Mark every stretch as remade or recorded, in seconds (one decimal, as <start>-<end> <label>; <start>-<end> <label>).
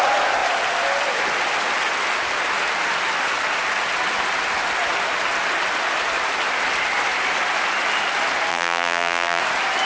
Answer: 0.0-8.5 recorded; 8.5-9.4 remade; 9.4-9.8 recorded